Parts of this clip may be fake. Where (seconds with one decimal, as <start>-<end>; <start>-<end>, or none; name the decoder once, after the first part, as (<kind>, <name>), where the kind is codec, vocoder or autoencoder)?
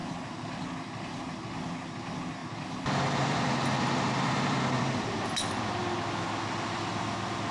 2.4-5.5 (vocoder, BigVGAN v2)